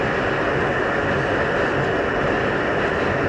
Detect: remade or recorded recorded